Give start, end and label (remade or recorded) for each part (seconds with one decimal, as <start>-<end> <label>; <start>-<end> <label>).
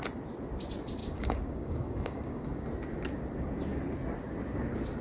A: 0.0-1.0 recorded; 1.0-2.7 remade; 2.7-5.0 recorded